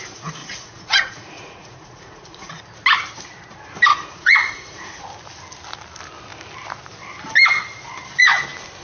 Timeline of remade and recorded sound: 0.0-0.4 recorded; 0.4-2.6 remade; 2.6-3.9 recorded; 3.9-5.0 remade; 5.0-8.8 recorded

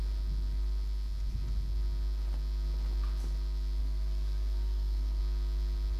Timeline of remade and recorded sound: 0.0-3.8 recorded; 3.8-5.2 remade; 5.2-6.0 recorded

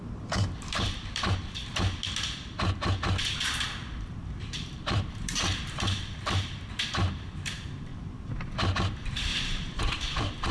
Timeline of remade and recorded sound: 0.0-1.6 remade; 1.6-4.0 recorded; 4.0-7.9 remade; 7.9-8.9 recorded; 8.9-10.5 remade

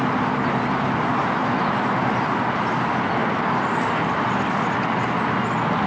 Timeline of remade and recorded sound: 0.0-5.9 recorded